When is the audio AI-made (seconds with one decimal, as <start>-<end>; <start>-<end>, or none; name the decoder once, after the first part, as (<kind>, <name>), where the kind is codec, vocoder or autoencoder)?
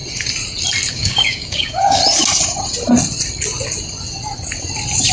0.9-2.0 (codec, DAC)